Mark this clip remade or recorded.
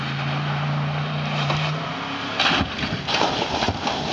recorded